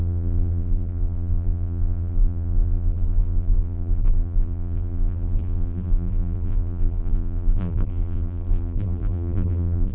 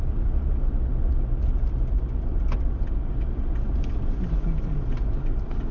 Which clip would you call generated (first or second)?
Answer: first